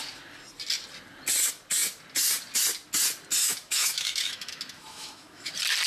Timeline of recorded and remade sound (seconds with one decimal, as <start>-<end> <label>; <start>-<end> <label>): 0.0-3.4 recorded; 3.4-5.5 remade; 5.5-5.9 recorded